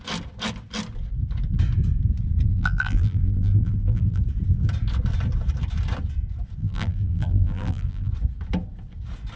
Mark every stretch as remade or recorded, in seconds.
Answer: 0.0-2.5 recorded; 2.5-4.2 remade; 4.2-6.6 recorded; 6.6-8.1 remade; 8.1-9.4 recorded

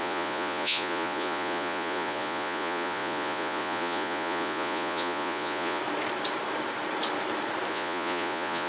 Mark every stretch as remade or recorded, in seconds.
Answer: 0.0-5.8 remade; 5.8-7.7 recorded; 7.7-8.7 remade